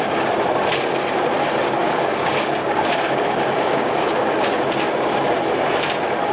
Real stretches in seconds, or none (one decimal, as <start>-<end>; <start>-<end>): 0.0-1.8; 4.6-6.3